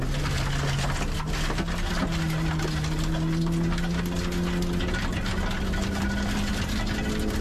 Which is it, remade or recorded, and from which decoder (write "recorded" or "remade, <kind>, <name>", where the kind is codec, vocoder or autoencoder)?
recorded